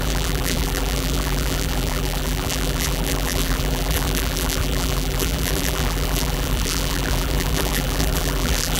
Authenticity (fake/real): fake